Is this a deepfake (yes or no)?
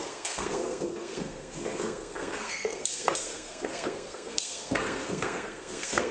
yes